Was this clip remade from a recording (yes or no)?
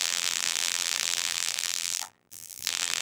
yes